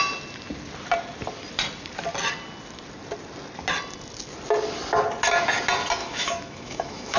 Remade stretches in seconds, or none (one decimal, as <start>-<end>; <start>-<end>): 6.0-7.2